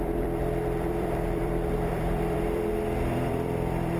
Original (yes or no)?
no